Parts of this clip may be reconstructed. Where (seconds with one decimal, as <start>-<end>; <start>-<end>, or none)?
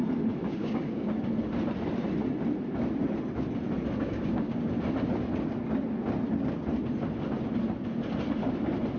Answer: 0.4-1.3; 4.0-4.7